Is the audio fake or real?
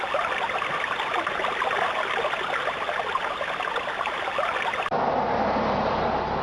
real